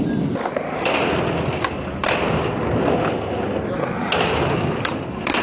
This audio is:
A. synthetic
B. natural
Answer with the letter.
A